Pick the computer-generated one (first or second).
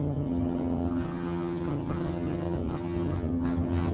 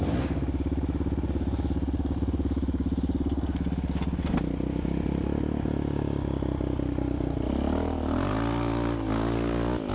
first